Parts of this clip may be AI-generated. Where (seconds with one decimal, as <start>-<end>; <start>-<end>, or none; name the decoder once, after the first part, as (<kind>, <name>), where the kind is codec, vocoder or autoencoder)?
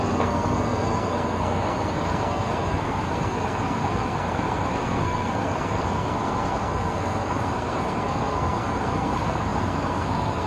0.0-10.5 (codec, SNAC)